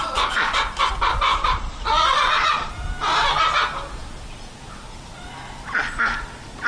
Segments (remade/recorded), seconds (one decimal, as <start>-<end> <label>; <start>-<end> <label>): 0.0-1.3 recorded; 1.3-2.7 remade; 2.7-6.7 recorded